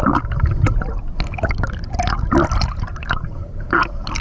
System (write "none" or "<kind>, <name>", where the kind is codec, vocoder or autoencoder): none